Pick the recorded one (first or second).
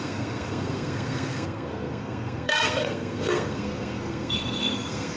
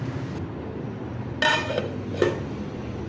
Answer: second